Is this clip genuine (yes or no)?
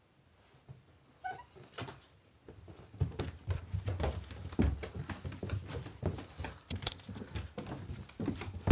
yes